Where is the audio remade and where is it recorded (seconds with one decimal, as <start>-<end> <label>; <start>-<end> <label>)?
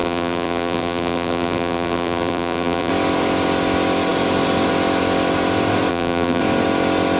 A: 0.0-2.9 remade; 2.9-5.9 recorded; 5.9-6.4 remade; 6.4-7.2 recorded